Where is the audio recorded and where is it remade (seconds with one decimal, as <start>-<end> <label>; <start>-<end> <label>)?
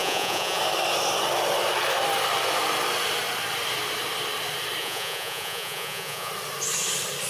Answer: 0.0-0.6 remade; 0.6-4.8 recorded; 4.8-6.3 remade; 6.3-7.3 recorded